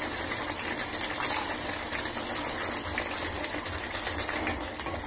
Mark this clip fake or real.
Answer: real